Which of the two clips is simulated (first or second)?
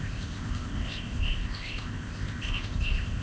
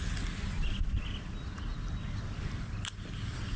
first